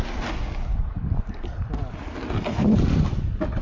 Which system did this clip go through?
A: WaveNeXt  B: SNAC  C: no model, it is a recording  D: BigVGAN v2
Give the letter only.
C